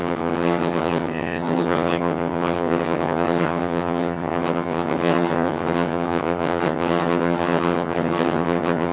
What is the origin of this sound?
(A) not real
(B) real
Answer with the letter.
A